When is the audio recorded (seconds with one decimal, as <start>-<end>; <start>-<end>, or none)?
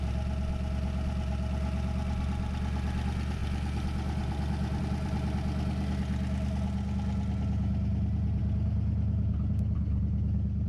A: 0.0-10.7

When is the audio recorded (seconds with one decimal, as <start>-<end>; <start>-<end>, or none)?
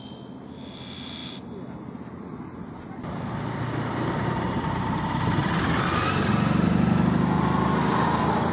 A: 0.0-8.5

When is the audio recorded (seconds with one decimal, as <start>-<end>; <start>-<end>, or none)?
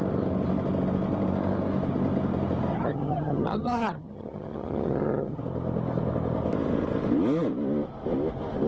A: 0.0-2.7; 5.4-8.7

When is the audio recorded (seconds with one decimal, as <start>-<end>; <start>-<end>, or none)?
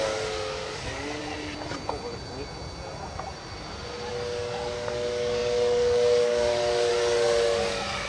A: 1.2-4.1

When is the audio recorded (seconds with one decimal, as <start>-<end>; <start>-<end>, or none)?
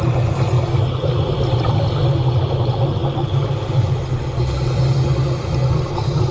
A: 0.0-6.3